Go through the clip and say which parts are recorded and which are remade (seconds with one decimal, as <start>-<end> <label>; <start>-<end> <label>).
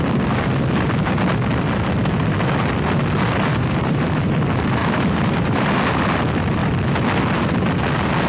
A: 0.0-3.5 recorded; 3.5-4.3 remade; 4.3-4.8 recorded; 4.8-5.7 remade; 5.7-8.3 recorded